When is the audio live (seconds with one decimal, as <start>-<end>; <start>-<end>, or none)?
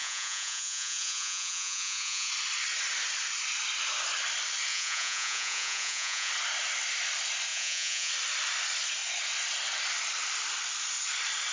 2.3-4.7; 6.3-7.5; 8.1-11.5